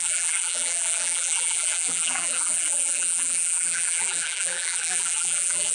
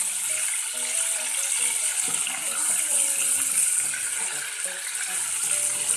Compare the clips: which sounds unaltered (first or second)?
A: second